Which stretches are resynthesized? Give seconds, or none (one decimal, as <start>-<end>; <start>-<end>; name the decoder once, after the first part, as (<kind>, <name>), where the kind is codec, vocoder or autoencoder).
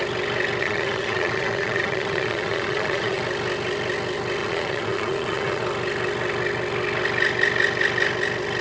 0.6-3.2 (vocoder, Vocos); 4.4-5.6